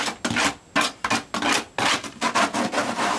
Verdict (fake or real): real